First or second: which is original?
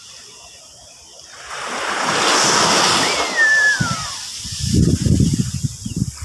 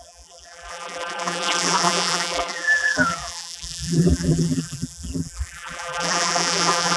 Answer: first